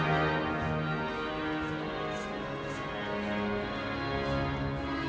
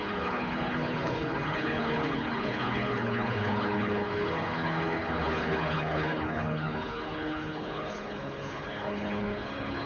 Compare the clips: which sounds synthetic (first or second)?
second